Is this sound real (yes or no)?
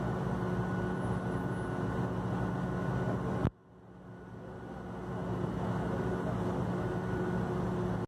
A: yes